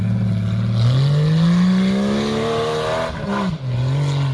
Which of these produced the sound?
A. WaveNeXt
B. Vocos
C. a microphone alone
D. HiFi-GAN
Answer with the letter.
C